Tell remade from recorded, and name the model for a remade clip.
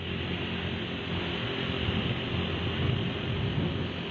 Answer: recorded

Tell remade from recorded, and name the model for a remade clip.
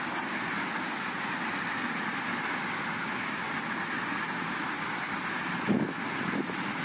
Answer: recorded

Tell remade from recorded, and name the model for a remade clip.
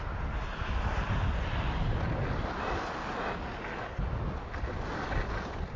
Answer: recorded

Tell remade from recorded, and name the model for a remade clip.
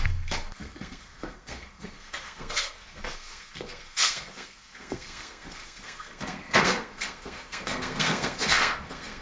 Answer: remade, codec, SNAC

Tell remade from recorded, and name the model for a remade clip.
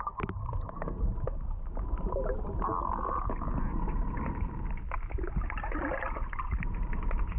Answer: recorded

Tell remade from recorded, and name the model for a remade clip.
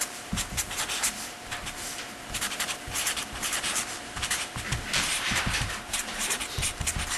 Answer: remade, vocoder, BigVGAN v2